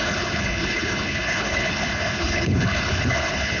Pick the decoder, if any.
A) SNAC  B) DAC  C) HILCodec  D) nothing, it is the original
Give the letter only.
C